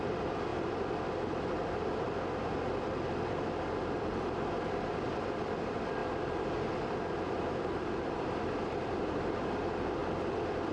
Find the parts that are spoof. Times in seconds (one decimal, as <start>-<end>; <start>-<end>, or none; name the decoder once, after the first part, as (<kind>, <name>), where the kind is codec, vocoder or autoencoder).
0.0-0.5 (vocoder, BigVGAN v2); 3.8-6.0; 7.3-10.0